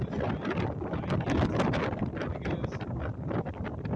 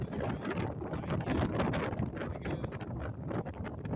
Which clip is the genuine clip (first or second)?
second